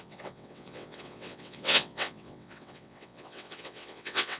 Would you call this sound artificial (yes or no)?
yes